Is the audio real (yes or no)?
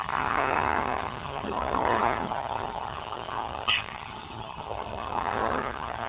no